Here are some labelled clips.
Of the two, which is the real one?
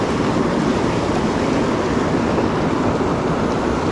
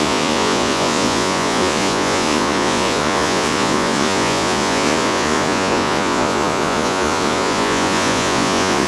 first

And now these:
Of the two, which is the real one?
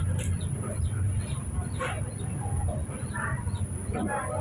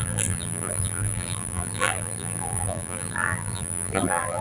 first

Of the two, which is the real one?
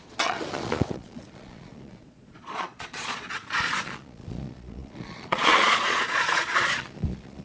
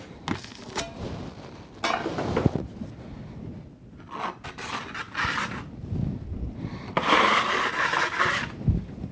second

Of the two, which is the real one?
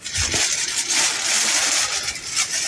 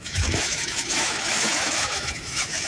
first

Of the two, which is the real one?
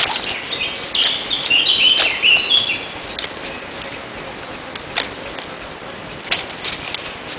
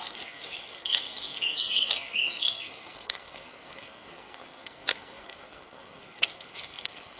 first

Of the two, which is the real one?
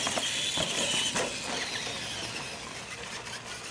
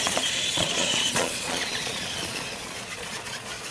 first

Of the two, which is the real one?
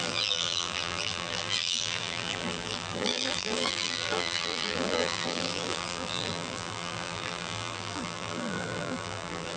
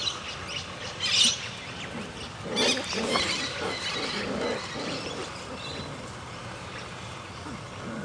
second